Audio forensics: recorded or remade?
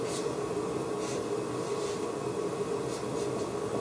recorded